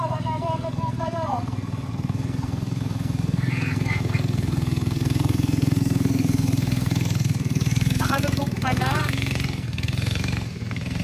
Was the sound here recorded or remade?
remade